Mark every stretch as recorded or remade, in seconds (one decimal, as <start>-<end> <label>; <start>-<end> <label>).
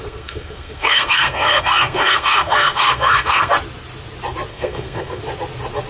0.0-3.5 remade; 3.5-4.5 recorded; 4.5-5.2 remade; 5.2-5.9 recorded